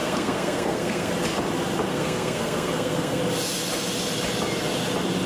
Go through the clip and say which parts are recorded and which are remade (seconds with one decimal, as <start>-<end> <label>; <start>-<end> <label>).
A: 0.0-1.1 remade; 1.1-1.9 recorded; 1.9-3.2 remade; 3.2-5.3 recorded